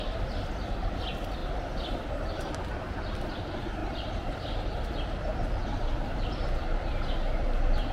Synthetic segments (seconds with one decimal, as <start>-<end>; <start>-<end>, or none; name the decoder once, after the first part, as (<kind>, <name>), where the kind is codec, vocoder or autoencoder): 1.4-2.5 (vocoder, BigVGAN v2); 3.8-6.6